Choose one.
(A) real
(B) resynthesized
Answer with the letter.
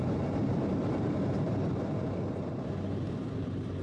B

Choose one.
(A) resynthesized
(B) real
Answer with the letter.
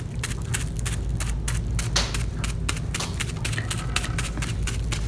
B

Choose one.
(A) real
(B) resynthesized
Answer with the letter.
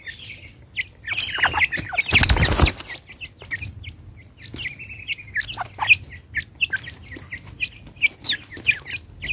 A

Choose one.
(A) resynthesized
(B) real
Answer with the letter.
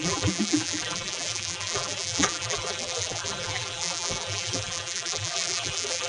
A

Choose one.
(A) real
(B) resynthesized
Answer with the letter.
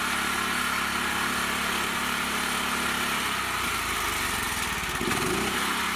A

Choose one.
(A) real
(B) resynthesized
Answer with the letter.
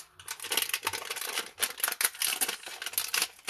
A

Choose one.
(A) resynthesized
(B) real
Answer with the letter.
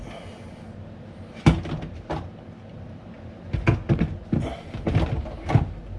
B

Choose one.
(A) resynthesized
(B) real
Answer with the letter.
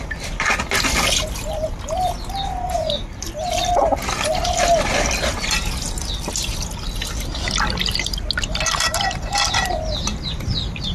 B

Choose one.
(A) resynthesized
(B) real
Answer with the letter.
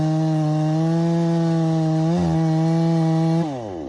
B